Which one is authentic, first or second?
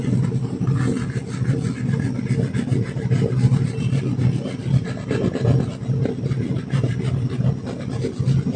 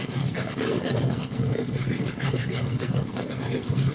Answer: first